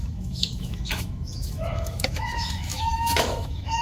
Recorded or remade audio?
remade